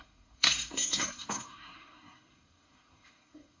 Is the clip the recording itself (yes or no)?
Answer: no